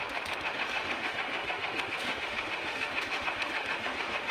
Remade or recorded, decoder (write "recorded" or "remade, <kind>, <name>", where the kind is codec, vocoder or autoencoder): remade, autoencoder, DAC-VAE